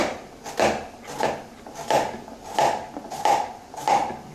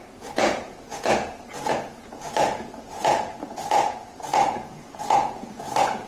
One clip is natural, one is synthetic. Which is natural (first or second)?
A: first